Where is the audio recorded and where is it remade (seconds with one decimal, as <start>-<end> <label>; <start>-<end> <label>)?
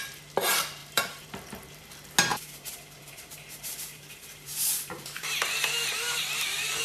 0.0-0.8 recorded; 0.8-1.8 remade; 1.8-2.3 recorded; 2.3-6.8 remade